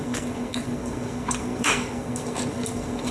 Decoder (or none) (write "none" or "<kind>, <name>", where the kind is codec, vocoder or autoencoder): codec, SNAC